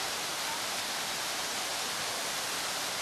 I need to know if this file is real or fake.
real